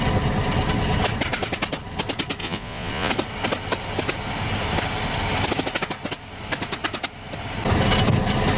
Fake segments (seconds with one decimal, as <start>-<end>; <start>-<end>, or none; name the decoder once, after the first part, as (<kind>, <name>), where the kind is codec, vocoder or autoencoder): 2.4-3.1 (vocoder, Vocos)